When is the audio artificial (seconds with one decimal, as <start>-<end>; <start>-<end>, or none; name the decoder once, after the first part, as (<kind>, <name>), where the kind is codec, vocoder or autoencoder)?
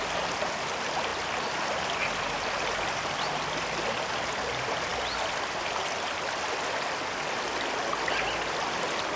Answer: none